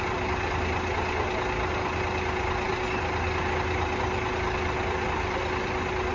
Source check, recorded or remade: recorded